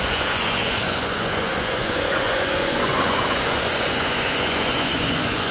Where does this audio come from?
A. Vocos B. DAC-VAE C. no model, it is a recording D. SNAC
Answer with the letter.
A